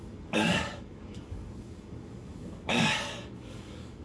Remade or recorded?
remade